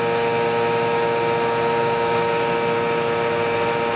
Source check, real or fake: real